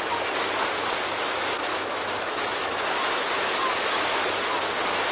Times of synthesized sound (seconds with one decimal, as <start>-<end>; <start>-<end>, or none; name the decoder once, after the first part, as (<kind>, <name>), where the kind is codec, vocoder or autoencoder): 1.7-4.0 (autoencoder, DAC-VAE)